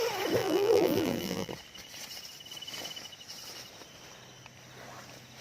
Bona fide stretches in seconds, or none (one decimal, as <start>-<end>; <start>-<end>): 0.0-0.4; 1.5-5.4